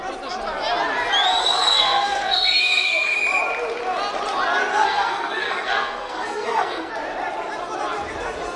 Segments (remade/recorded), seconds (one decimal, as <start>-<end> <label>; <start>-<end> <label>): 0.0-1.4 recorded; 1.4-3.2 remade; 3.2-4.7 recorded; 4.7-6.9 remade; 6.9-8.6 recorded